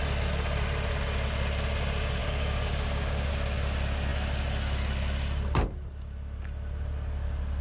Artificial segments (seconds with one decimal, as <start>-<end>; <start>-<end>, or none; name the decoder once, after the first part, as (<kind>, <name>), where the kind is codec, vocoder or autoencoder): 2.2-3.3 (codec, DAC)